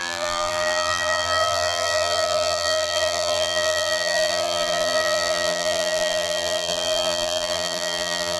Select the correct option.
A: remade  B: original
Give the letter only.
A